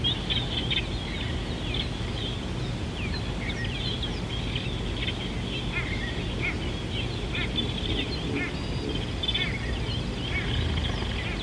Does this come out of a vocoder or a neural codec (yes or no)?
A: no